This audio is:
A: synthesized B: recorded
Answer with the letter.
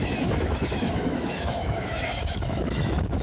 A